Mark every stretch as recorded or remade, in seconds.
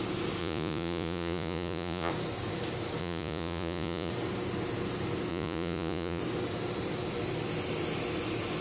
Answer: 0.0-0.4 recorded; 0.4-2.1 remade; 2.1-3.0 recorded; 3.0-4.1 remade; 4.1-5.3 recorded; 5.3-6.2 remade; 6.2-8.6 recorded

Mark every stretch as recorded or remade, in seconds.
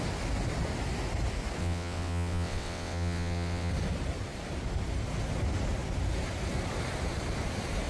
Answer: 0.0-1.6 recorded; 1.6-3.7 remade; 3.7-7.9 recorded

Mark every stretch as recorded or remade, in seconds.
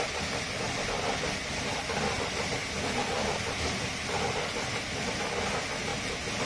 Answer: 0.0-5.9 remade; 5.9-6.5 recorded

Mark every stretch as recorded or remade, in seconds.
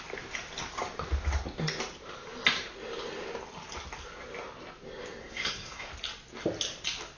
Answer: 0.0-5.2 recorded; 5.2-5.9 remade; 5.9-7.2 recorded